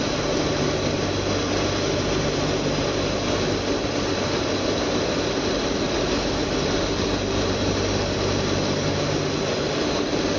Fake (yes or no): no